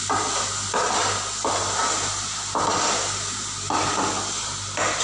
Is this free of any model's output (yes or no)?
yes